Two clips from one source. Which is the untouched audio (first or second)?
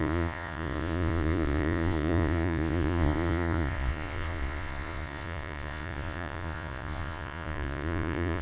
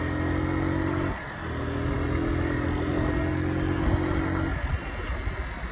second